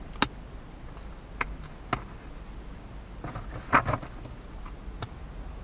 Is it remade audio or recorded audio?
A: recorded